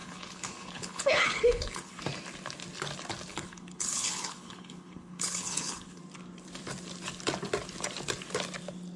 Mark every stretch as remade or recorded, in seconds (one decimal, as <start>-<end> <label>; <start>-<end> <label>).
0.0-2.0 remade; 2.0-3.3 recorded; 3.3-6.0 remade; 6.0-9.0 recorded